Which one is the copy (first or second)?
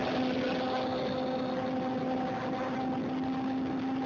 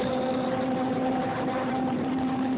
second